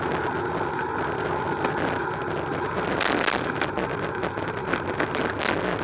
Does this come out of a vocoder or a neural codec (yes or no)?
no